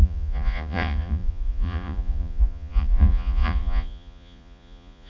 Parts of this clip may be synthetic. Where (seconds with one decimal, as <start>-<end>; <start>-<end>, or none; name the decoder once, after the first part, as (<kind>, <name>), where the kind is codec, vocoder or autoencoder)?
0.0-5.1 (vocoder, Vocos)